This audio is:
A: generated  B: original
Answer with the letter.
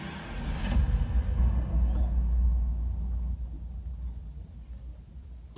B